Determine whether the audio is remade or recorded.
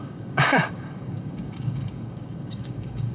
remade